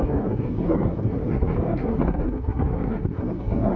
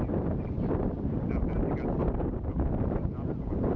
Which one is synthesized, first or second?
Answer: first